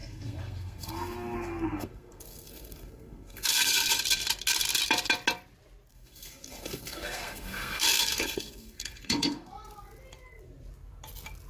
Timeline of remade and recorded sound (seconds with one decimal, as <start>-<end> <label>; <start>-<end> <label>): 0.0-4.0 remade; 4.0-5.9 recorded; 5.9-9.5 remade; 9.5-11.5 recorded